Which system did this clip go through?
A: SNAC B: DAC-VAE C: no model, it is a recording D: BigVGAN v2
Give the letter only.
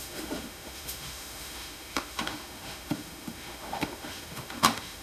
B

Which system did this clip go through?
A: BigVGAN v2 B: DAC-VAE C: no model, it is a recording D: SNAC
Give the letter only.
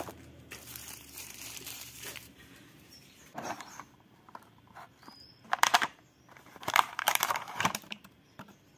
A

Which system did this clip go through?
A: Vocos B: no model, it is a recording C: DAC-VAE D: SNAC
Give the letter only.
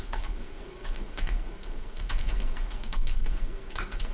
D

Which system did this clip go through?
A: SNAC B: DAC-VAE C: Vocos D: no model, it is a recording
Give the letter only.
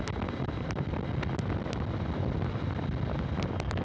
D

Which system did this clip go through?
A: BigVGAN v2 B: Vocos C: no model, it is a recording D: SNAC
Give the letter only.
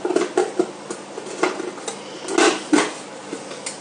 C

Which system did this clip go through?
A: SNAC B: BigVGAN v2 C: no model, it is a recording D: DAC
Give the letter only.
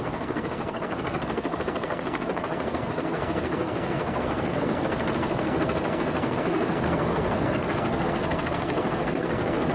A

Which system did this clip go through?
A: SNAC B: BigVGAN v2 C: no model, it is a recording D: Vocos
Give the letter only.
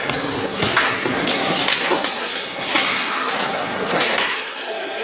A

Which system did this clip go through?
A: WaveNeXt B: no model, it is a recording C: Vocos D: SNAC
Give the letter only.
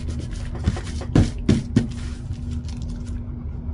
B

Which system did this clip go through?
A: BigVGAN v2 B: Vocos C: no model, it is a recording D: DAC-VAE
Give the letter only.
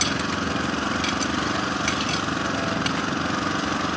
C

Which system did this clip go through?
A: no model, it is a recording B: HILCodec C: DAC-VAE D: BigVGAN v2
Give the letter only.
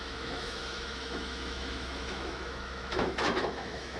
C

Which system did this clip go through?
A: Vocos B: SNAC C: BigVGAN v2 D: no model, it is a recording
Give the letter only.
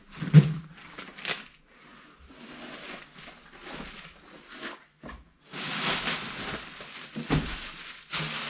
D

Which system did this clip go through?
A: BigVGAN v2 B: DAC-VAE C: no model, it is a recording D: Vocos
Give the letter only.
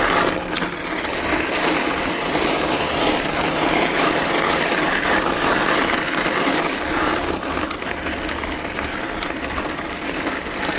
C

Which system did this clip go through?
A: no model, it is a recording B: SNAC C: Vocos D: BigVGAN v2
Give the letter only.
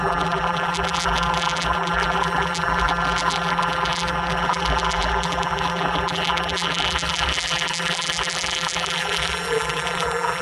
D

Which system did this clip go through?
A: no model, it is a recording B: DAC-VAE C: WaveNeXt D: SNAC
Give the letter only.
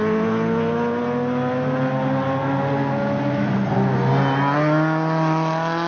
A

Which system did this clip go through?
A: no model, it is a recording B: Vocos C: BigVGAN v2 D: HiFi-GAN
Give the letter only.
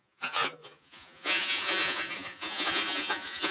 B